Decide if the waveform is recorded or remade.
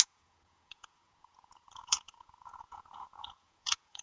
remade